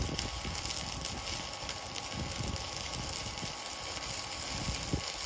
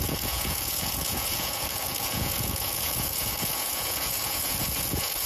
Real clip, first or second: first